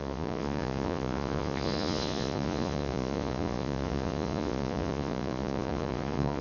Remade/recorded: remade